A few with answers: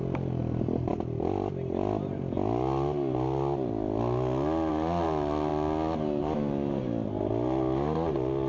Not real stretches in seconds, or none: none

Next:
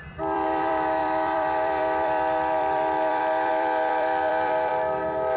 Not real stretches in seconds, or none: 0.0-4.7 (vocoder, BigVGAN v2)

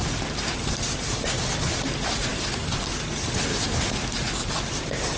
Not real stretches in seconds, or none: none

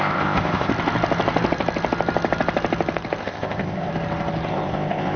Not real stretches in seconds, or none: 0.0-0.7 (codec, ZipCodec); 3.2-3.9; 4.5-5.2

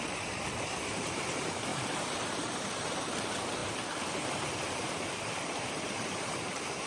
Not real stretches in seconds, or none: 0.0-6.9 (vocoder, BigVGAN v2)

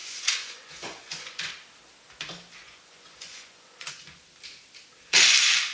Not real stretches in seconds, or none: 0.0-1.5 (vocoder, Vocos); 2.6-4.2

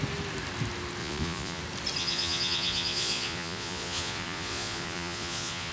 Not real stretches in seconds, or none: 1.0-1.6 (vocoder, Vocos); 2.0-5.7